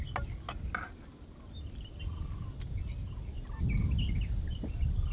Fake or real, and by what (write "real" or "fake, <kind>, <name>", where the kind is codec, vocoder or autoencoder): real